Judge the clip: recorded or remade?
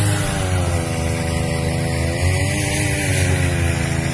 recorded